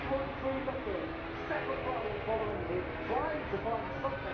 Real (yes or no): yes